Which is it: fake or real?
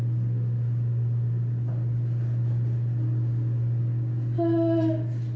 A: real